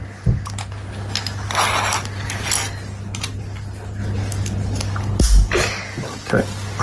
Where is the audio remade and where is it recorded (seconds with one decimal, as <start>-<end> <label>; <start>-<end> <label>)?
0.0-6.8 recorded